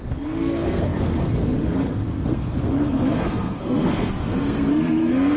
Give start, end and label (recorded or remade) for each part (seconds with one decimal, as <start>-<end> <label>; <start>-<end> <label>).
0.0-5.4 remade